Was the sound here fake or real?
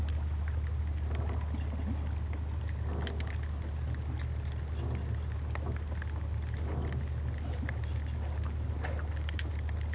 real